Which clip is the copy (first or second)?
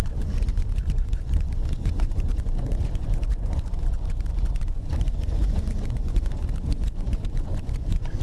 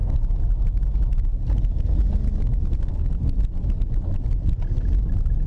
first